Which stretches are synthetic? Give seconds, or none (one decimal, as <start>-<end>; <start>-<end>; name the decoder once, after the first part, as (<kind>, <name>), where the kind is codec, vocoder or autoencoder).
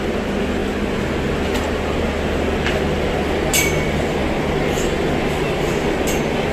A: none